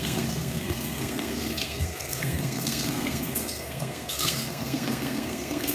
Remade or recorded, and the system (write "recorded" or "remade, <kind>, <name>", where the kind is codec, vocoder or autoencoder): remade, codec, SNAC